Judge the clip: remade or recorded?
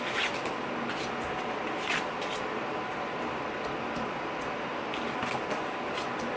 recorded